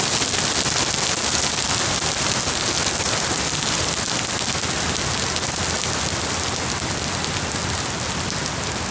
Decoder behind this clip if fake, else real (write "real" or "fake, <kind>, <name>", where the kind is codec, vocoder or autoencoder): real